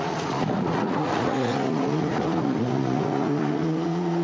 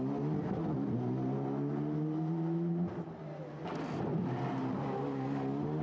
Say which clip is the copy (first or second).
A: first